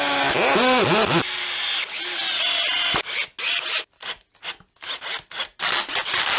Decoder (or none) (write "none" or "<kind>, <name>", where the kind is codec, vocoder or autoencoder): none